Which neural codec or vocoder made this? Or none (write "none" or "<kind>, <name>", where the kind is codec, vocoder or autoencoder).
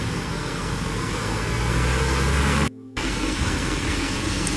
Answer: codec, SNAC